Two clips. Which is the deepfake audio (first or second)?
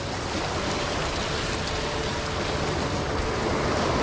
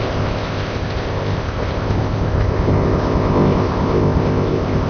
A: second